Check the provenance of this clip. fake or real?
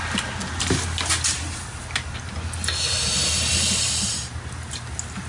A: real